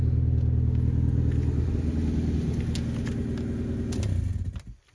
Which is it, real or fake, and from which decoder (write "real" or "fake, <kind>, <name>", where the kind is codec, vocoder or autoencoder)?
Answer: real